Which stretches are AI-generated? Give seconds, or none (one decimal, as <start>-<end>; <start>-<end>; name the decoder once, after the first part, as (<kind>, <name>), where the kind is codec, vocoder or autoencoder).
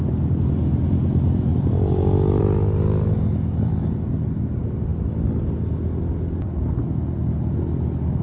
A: none